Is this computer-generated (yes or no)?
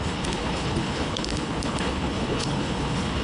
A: yes